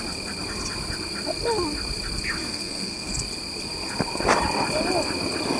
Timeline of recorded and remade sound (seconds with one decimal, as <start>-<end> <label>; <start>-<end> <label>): 0.0-2.4 recorded; 2.4-3.1 remade; 3.1-5.6 recorded